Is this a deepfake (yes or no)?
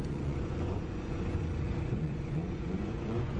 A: yes